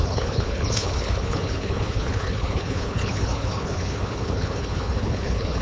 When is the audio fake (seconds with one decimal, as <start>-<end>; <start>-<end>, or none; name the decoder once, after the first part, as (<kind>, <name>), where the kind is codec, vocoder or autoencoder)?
0.0-5.6 (codec, HILCodec)